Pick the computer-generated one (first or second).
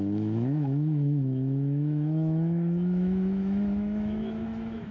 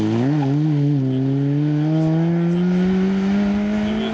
first